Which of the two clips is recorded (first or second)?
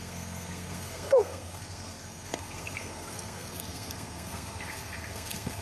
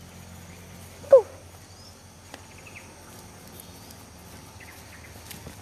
second